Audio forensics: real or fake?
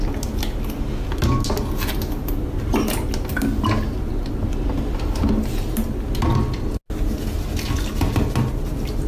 real